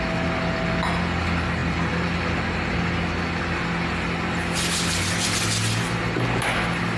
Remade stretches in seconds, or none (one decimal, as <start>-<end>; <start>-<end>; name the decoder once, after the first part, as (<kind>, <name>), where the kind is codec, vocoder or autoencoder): none